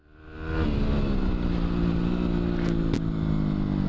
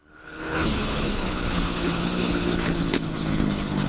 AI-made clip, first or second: second